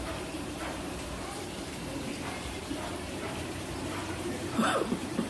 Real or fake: fake